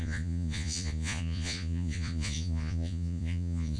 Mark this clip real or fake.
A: fake